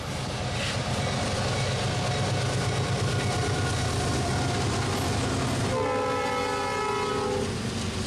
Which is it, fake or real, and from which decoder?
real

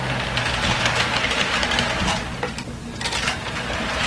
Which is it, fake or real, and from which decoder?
real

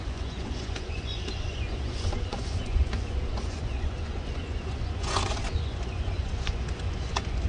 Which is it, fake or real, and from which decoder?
fake, vocoder, Vocos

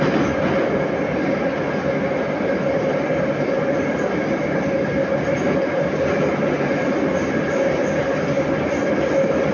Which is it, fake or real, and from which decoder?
real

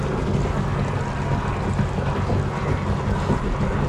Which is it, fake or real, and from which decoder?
real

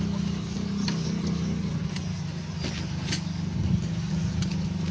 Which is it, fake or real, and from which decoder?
real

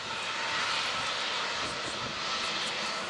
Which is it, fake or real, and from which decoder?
real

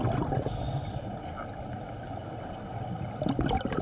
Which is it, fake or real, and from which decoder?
real